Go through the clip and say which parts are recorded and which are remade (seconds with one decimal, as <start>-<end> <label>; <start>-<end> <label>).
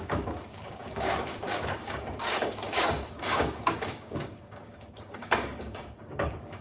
0.0-6.6 remade